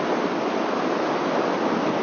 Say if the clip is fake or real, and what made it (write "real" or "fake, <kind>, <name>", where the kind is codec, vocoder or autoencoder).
real